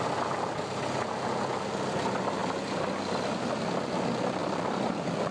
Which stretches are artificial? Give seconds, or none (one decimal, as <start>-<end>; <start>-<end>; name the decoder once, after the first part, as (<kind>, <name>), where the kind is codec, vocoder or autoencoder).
4.4-5.3 (vocoder, BigVGAN v2)